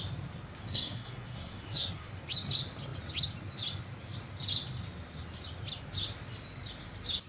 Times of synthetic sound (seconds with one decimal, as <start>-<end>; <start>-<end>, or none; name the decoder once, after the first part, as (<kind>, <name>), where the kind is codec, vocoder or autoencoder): 0.7-2.1 (codec, SNAC)